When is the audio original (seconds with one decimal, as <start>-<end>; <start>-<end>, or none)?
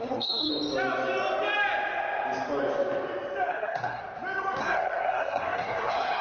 0.5-3.5; 4.0-4.6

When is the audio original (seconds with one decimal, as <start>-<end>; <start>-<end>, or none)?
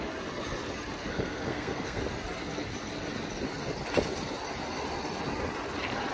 0.0-1.1; 2.0-6.1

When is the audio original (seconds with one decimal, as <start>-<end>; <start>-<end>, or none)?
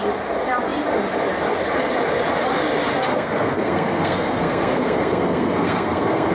0.0-3.1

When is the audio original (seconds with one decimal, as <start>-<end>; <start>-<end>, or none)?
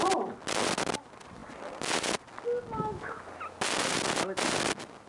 0.0-5.1